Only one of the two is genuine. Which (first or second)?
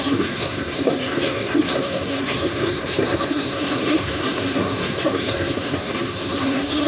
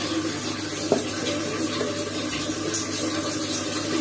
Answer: second